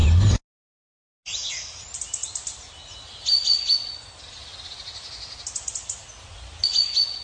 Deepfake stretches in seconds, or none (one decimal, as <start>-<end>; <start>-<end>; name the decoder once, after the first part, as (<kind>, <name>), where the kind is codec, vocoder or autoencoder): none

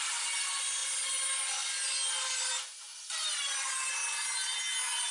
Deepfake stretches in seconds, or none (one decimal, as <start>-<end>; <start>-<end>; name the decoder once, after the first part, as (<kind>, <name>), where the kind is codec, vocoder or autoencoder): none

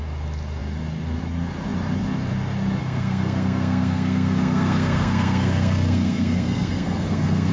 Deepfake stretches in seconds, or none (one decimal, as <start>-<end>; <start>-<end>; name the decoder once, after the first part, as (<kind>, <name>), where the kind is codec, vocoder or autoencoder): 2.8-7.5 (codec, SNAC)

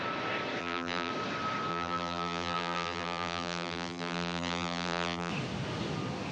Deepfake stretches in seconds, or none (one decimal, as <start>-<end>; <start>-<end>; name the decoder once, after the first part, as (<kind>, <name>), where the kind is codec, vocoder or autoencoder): 0.6-1.1 (vocoder, BigVGAN v2); 1.7-5.3

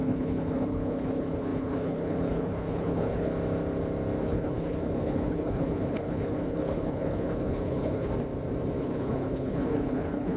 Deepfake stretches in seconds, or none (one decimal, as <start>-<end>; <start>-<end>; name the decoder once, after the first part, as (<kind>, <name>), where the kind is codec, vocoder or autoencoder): 0.0-3.3 (codec, HILCodec); 4.2-8.1; 8.8-10.4